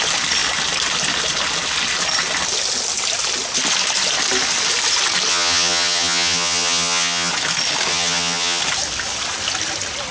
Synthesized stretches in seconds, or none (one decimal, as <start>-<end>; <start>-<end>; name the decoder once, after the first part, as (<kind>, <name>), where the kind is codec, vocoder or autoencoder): 5.3-7.3 (vocoder, HiFi-GAN); 7.9-8.6